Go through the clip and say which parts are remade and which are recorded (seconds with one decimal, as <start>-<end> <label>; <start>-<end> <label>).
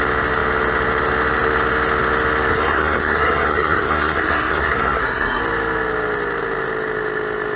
0.0-2.5 recorded; 2.5-5.4 remade; 5.4-7.6 recorded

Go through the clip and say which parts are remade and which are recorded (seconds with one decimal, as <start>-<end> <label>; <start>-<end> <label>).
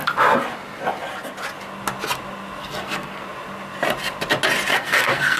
0.0-2.6 recorded; 2.6-3.2 remade; 3.2-4.7 recorded; 4.7-5.4 remade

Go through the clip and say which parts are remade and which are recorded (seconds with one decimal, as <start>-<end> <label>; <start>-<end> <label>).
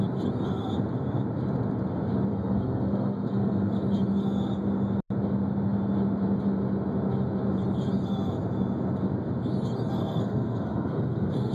0.0-2.3 recorded; 2.3-3.7 remade; 3.7-10.0 recorded; 10.0-11.5 remade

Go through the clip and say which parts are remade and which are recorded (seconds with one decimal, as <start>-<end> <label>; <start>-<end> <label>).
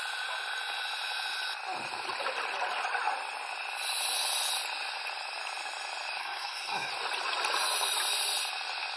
0.0-6.2 recorded; 6.2-6.9 remade; 6.9-9.0 recorded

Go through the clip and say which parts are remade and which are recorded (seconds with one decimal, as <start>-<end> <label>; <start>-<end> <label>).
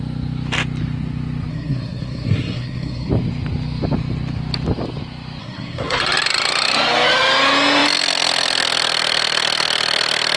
0.0-1.5 recorded; 1.5-3.1 remade; 3.1-5.4 recorded; 5.4-6.0 remade; 6.0-10.4 recorded